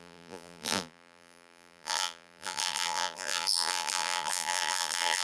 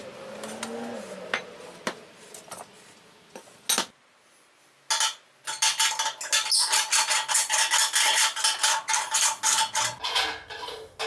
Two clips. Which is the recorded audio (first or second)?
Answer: second